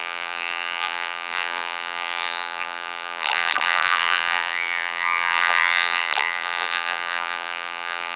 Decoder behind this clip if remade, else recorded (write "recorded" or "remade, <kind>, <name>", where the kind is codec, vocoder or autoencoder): remade, vocoder, BigVGAN v2